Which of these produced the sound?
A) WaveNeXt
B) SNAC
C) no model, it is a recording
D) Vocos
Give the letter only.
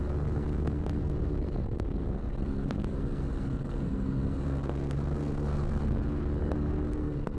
B